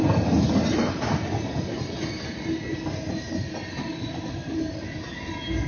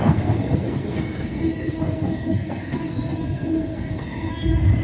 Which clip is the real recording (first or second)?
first